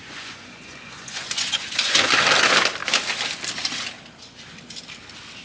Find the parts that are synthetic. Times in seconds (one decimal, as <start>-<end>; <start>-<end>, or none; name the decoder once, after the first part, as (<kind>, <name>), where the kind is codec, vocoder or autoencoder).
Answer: 0.0-2.1 (vocoder, Vocos)